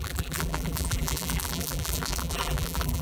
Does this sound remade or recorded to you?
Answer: remade